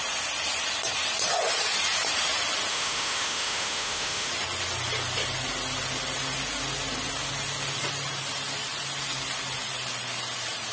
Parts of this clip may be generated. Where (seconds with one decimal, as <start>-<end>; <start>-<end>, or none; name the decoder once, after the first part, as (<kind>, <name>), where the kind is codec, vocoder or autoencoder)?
2.7-4.3 (autoencoder, DAC-VAE)

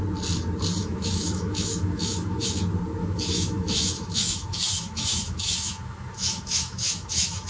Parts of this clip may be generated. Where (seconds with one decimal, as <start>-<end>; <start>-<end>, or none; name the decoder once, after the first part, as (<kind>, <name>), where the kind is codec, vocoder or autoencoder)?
0.8-2.6 (autoencoder, DAC-VAE); 3.0-7.5